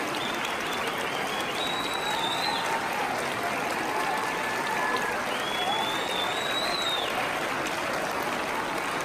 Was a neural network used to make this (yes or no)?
no